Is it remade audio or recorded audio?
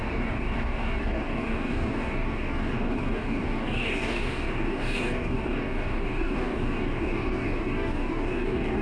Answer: remade